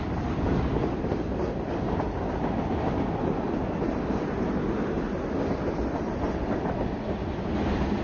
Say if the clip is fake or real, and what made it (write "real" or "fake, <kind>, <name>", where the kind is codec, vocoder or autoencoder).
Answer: real